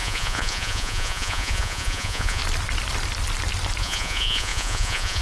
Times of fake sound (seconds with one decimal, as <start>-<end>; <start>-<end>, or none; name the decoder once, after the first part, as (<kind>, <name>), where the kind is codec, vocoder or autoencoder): 0.0-2.4 (vocoder, Vocos); 3.8-5.2